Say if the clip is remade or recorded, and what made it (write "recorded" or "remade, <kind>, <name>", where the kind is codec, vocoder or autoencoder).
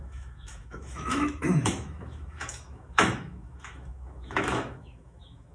remade, autoencoder, DAC-VAE